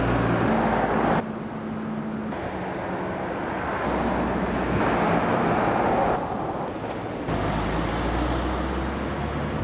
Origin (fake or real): real